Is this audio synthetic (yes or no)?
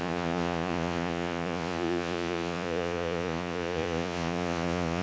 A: yes